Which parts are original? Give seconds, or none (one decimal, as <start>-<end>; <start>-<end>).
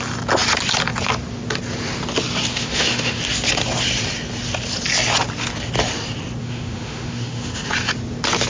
0.0-2.5; 3.2-6.4; 7.7-8.5